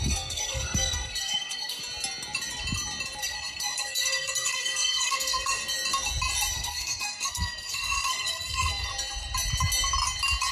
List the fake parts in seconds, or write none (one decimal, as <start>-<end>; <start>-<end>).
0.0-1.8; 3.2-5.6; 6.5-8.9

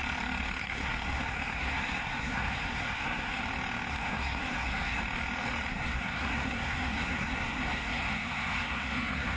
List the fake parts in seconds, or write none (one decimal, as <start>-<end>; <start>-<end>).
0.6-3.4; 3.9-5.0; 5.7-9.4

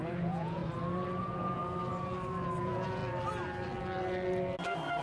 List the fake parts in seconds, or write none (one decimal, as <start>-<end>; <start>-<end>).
0.0-0.6; 1.2-1.6; 2.6-3.0

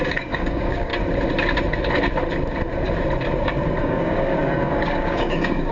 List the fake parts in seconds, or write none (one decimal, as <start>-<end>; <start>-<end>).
0.0-0.9; 3.8-5.7

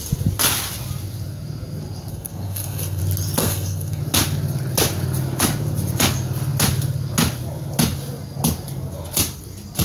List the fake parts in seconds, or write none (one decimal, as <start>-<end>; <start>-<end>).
2.1-3.0; 3.4-4.0

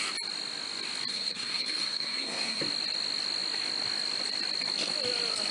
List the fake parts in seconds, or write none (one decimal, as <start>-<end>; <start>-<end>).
1.1-2.6

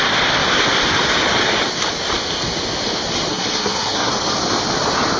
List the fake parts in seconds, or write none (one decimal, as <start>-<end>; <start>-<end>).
3.3-4.1